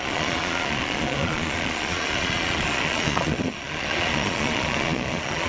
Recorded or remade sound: remade